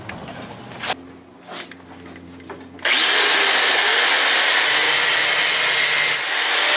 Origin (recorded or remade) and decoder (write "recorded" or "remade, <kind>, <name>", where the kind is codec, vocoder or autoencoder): recorded